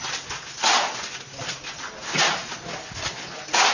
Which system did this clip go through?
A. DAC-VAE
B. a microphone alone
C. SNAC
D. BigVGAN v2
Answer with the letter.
B